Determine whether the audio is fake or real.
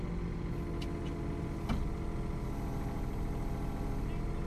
real